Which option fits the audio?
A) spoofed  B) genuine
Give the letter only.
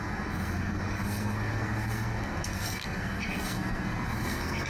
A